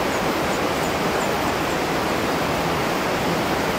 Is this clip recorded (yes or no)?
yes